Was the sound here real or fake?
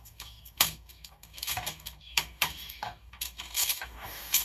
fake